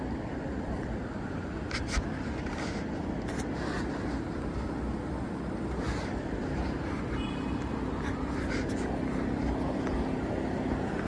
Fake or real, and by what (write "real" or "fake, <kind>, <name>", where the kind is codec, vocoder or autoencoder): real